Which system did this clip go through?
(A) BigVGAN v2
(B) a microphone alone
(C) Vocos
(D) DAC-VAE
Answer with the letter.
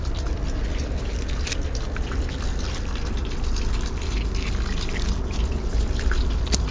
B